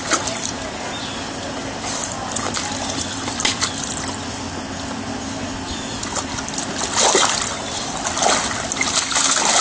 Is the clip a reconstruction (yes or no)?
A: no